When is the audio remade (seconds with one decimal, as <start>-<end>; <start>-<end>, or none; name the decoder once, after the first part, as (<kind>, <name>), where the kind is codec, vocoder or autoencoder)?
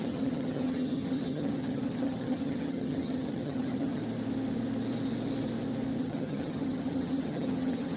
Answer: 0.0-4.0 (vocoder, HiFi-GAN); 6.0-8.0